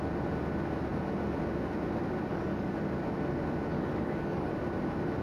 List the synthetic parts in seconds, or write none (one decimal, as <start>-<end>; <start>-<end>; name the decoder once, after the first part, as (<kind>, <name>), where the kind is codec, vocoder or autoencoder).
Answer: 2.3-2.8 (codec, DAC); 3.7-4.5